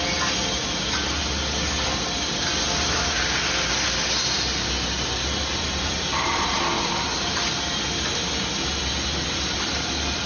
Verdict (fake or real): real